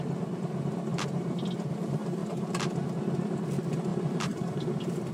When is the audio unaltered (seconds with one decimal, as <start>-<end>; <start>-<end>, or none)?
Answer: 0.0-3.9